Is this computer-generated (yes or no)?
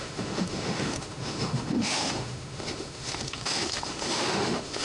yes